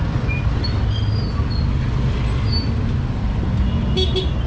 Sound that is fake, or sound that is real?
real